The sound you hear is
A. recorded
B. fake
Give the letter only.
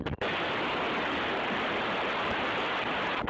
A